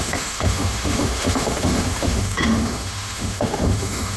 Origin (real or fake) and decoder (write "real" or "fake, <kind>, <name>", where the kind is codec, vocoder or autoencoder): fake, autoencoder, DAC-VAE